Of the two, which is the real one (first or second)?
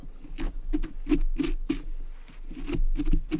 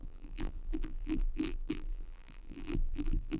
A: first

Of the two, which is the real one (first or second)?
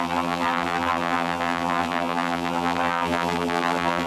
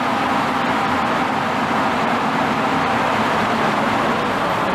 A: second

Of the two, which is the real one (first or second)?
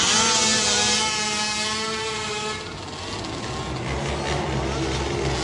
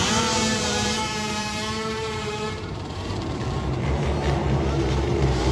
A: first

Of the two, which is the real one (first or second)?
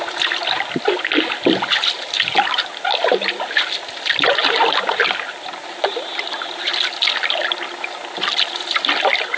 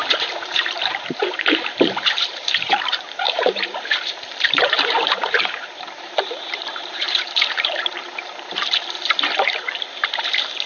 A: first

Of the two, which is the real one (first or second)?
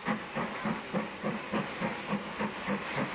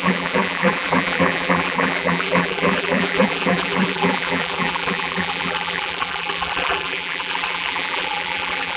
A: first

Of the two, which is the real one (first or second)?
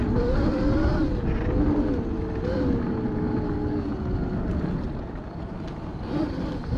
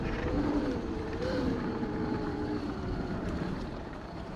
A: first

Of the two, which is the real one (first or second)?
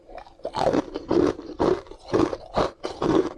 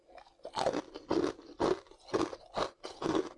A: second